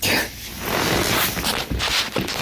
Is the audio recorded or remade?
recorded